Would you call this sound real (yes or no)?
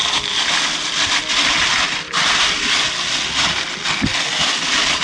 yes